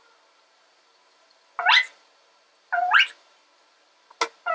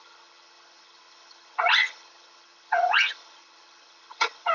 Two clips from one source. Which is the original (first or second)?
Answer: first